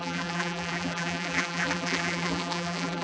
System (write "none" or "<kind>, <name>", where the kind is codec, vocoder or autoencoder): vocoder, BigVGAN v2